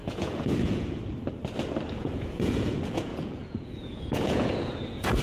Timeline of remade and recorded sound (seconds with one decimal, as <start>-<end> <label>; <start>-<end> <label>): 0.0-1.0 remade; 1.0-1.9 recorded; 1.9-5.2 remade

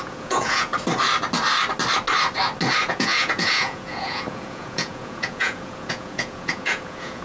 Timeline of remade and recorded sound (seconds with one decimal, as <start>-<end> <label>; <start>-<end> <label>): 0.0-0.7 remade; 0.7-2.8 recorded; 2.8-7.2 remade

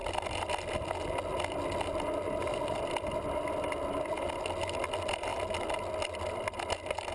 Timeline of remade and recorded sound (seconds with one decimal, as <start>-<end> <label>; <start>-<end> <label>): 0.0-7.1 recorded

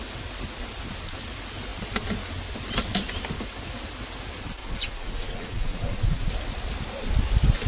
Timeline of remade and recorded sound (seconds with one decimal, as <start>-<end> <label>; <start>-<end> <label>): 0.0-4.6 recorded; 4.6-6.3 remade; 6.3-7.7 recorded

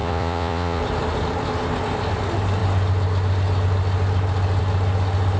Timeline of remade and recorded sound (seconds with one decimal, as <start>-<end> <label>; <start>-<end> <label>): 0.0-0.8 remade; 0.8-5.4 recorded

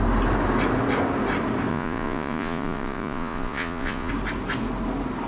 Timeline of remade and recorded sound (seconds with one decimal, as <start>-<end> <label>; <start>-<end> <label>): 0.0-1.7 recorded; 1.7-4.1 remade; 4.1-5.3 recorded